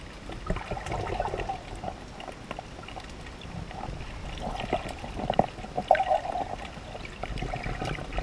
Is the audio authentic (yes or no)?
yes